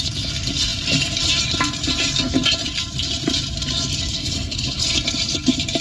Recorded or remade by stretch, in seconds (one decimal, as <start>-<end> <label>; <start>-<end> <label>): 0.0-4.2 recorded; 4.2-4.8 remade; 4.8-5.8 recorded